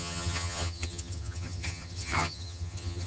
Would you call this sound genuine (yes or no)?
no